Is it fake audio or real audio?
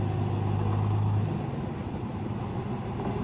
real